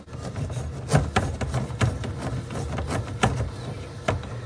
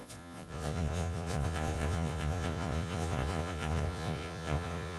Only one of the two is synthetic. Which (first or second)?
second